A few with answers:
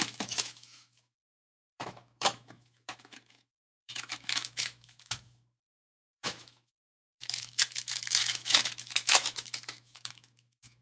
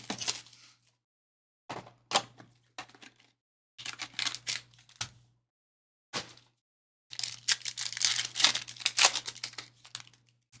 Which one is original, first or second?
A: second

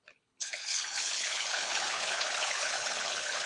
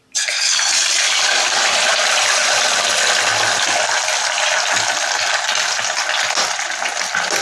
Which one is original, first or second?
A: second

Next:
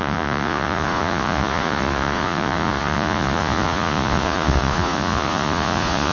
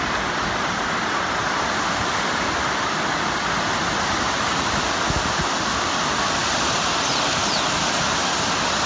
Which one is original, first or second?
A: second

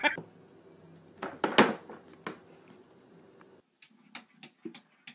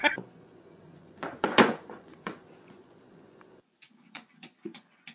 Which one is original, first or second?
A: first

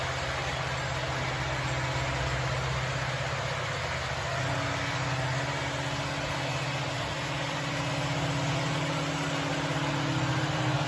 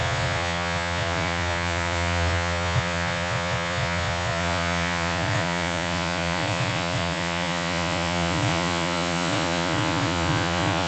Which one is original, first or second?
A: first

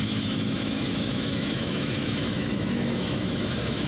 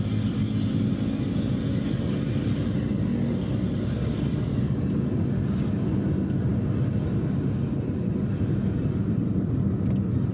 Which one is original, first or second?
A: second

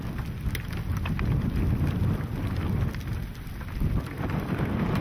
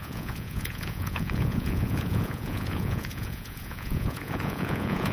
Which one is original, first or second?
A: first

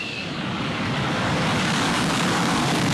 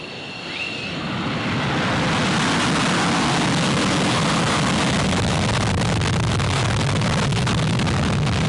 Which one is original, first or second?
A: second